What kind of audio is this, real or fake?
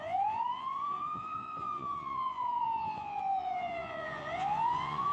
fake